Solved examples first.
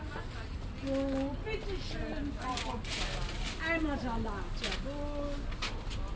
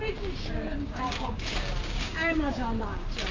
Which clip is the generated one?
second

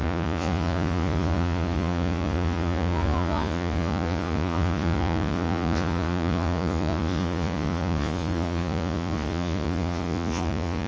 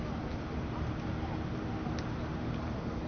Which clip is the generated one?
first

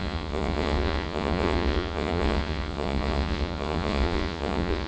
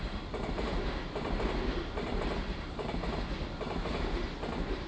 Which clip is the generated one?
first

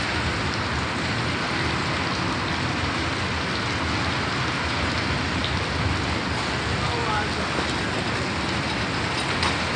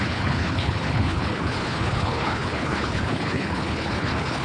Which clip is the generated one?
second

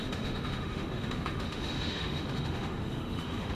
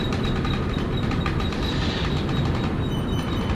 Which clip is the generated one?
first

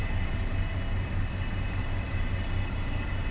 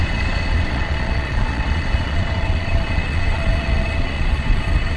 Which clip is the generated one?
second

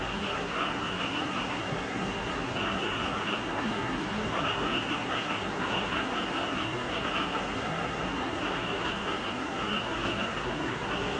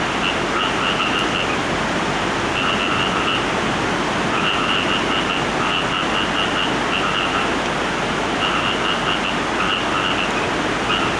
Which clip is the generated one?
first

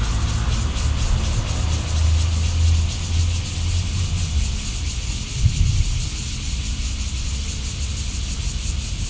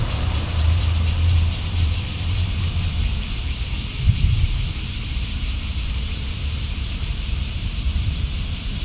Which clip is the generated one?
second